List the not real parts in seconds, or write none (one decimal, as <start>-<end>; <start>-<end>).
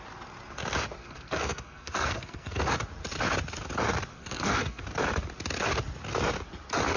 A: 1.0-2.6; 4.1-4.8